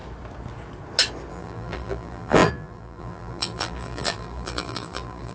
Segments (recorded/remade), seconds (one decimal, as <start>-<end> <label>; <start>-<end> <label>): 0.0-1.3 recorded; 1.3-5.3 remade